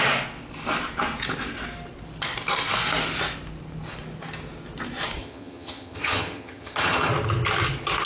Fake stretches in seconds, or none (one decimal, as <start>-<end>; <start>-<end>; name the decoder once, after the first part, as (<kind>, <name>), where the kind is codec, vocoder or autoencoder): 5.2-7.1 (vocoder, HiFi-GAN)